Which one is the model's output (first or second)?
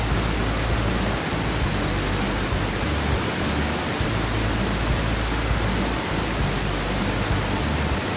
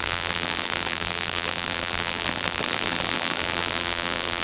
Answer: second